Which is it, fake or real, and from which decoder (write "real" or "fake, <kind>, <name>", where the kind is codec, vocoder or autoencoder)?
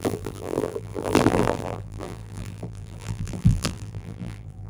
fake, vocoder, BigVGAN v2